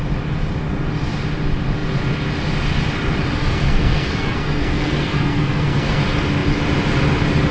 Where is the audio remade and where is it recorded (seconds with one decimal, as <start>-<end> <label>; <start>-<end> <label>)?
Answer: 0.0-3.4 recorded; 3.4-6.0 remade; 6.0-7.5 recorded